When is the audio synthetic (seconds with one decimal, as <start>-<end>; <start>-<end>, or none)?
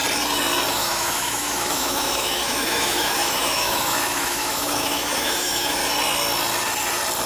0.7-5.8